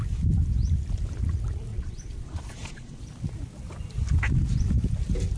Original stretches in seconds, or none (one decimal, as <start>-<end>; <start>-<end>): 0.0-1.7; 3.0-5.4